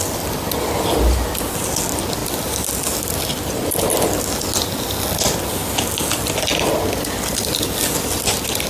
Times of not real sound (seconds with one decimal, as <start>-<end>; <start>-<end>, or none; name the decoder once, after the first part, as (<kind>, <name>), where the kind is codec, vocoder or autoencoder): none